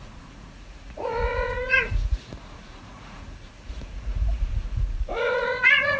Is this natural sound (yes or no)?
no